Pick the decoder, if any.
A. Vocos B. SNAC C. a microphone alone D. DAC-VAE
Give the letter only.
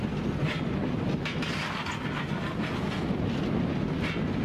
C